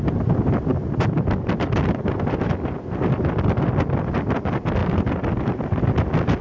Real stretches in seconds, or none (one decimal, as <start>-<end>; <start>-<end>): 0.0-0.7; 3.7-4.8; 5.8-6.4